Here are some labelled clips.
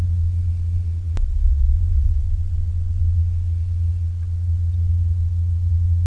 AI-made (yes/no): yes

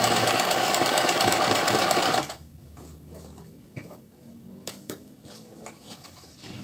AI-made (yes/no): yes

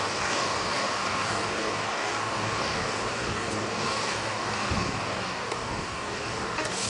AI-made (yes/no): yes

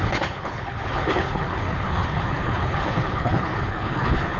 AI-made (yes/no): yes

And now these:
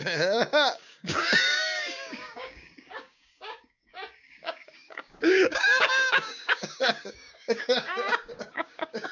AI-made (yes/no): yes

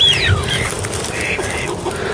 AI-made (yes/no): yes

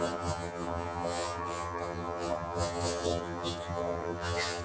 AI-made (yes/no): yes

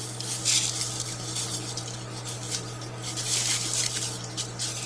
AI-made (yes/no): no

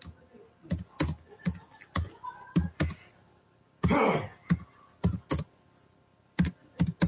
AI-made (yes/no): no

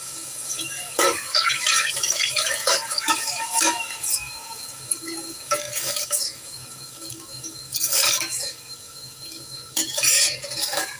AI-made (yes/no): yes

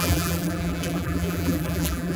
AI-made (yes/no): yes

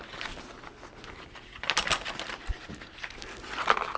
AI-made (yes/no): no